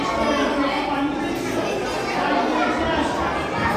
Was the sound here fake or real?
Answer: real